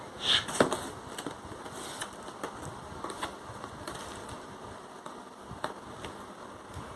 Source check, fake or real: real